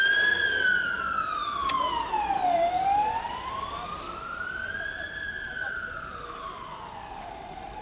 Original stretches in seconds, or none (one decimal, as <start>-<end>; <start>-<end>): 0.0-7.8